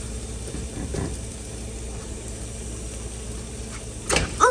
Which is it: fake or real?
real